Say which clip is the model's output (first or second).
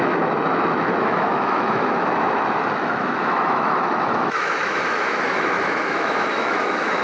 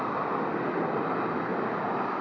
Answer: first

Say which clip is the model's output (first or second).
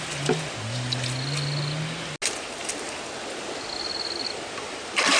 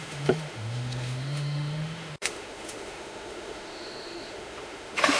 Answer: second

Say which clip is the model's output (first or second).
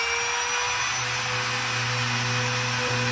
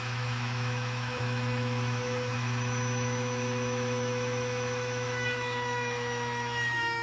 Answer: second